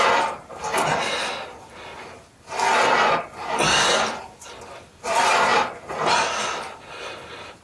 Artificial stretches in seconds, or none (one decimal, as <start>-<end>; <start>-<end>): none